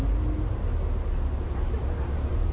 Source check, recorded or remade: recorded